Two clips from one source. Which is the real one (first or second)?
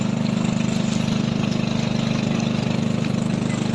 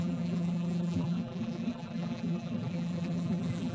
first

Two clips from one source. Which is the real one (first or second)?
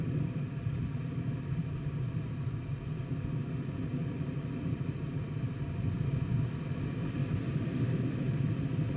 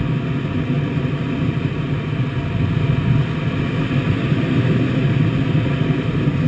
second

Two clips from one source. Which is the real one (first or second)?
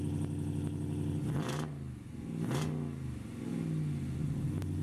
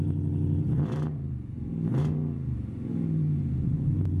first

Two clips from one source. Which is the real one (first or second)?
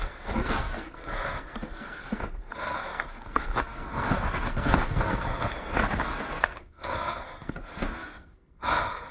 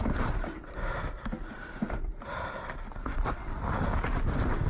second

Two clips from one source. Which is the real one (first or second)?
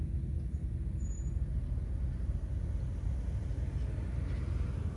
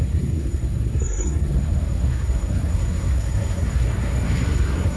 first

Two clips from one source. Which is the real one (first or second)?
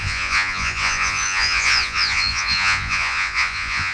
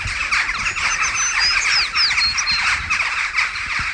second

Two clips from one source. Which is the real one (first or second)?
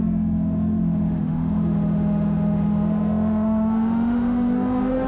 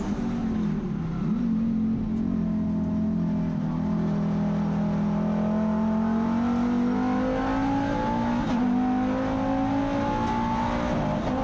second